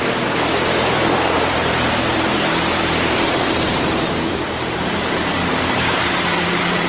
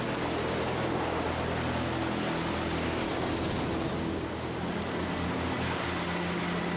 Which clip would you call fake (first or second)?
first